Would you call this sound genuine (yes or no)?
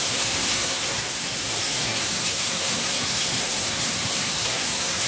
no